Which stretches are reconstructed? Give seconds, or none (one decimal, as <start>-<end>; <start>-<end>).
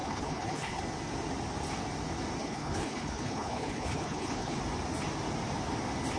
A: 0.0-0.8; 2.4-4.6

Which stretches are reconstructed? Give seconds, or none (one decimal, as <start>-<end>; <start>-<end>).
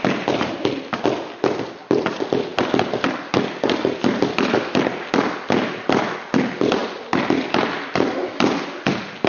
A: none